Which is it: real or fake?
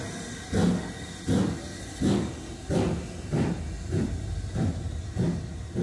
real